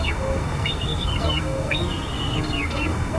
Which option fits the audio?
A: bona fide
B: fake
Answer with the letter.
B